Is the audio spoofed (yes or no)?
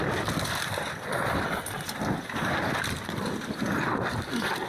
no